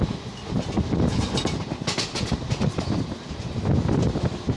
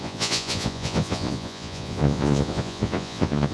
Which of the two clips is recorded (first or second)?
first